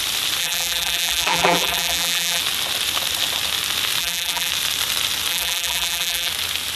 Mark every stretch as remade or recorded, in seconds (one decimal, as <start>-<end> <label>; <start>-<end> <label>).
0.0-0.4 recorded; 0.4-2.4 remade; 2.4-4.0 recorded; 4.0-4.5 remade; 4.5-5.3 recorded; 5.3-6.3 remade; 6.3-6.8 recorded